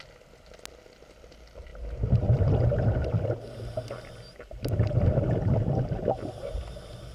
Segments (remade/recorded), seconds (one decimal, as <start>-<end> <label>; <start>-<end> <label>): 0.0-7.1 recorded